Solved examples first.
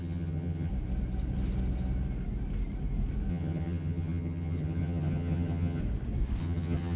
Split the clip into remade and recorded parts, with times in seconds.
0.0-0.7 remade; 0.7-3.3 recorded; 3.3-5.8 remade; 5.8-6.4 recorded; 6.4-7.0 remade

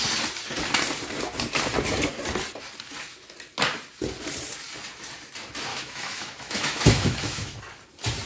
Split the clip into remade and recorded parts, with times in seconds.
0.0-5.7 recorded; 5.7-7.6 remade; 7.6-8.3 recorded

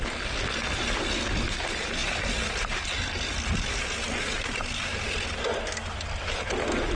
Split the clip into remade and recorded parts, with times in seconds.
0.0-6.9 recorded

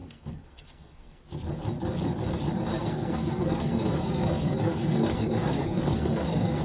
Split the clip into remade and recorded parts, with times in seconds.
0.0-1.2 remade; 1.2-2.7 recorded; 2.7-6.6 remade

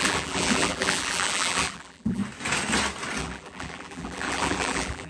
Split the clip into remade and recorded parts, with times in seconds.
0.0-2.2 remade; 2.2-3.2 recorded; 3.2-5.1 remade

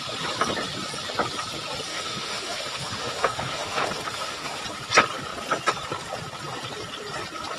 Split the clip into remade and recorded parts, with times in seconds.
0.0-1.9 recorded; 1.9-4.6 remade; 4.6-7.6 recorded